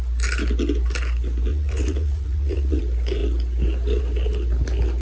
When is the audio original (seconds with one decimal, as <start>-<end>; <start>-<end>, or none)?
0.0-1.5; 2.8-5.0